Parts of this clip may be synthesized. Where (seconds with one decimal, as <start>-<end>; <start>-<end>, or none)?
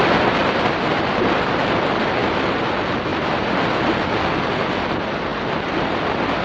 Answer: 0.4-1.8; 2.2-2.7; 3.1-3.7; 5.3-6.4